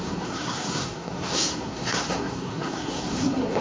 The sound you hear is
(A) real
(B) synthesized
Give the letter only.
B